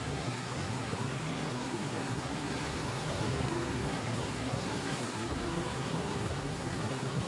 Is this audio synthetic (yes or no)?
yes